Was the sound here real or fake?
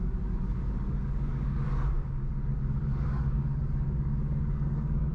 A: fake